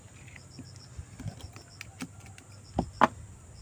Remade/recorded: recorded